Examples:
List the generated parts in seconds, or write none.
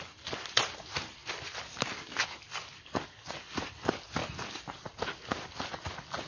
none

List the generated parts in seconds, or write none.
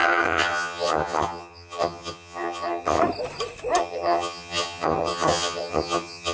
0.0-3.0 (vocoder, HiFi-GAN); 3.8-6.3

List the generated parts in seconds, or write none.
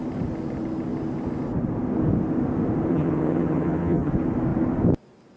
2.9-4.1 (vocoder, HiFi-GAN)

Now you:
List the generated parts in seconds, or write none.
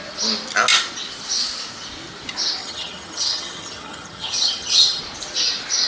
2.6-5.0 (vocoder, HiFi-GAN)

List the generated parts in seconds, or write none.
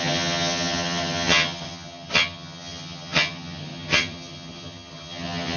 0.0-5.6 (vocoder, HiFi-GAN)